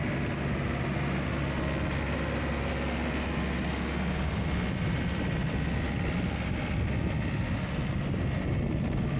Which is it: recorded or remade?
recorded